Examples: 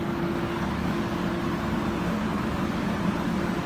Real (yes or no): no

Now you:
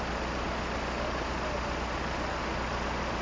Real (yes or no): yes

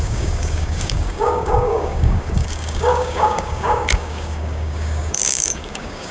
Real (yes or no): no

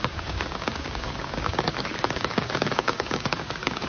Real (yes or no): no